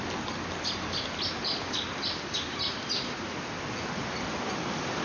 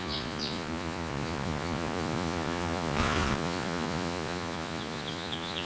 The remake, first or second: second